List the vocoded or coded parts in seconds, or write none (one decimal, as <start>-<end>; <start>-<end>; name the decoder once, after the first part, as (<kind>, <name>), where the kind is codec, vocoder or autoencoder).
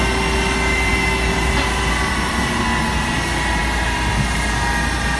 none